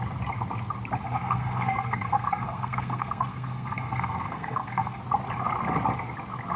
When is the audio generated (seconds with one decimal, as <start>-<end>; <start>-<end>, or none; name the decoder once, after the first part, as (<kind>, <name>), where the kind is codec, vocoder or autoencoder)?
1.0-5.0 (codec, SNAC)